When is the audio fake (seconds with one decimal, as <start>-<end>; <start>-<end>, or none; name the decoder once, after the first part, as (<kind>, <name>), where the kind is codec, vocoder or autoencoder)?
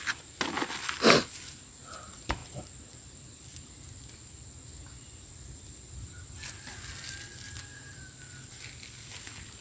2.4-3.7 (vocoder, BigVGAN v2); 7.7-8.2